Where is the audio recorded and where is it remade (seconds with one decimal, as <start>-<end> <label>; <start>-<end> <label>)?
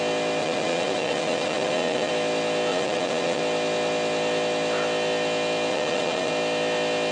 0.0-0.4 recorded; 0.4-2.1 remade; 2.1-2.7 recorded; 2.7-3.4 remade; 3.4-5.7 recorded; 5.7-6.3 remade; 6.3-7.1 recorded